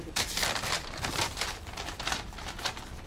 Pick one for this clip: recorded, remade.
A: remade